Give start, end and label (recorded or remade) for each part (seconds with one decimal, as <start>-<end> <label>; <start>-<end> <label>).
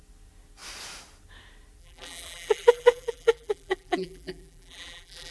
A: 0.0-1.8 recorded; 1.8-5.3 remade